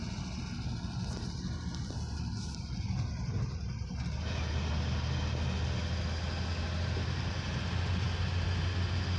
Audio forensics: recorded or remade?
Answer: recorded